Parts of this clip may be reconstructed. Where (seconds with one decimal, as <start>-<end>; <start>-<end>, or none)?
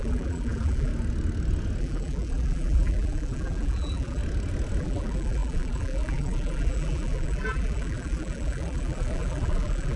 0.0-0.9; 1.8-4.2; 4.8-10.0